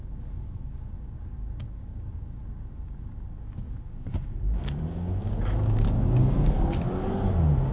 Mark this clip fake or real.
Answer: fake